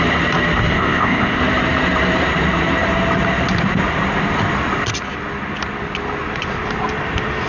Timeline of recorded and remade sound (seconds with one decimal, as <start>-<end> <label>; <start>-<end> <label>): 0.0-0.7 recorded; 0.7-1.4 remade; 1.4-7.5 recorded